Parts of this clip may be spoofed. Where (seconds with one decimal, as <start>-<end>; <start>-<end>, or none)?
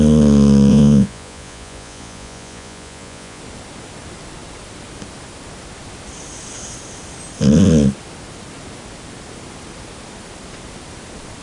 0.7-3.4